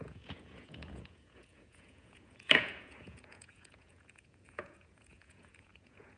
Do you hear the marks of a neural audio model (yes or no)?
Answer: yes